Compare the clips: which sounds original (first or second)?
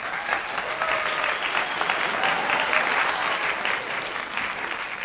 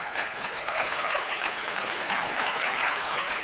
first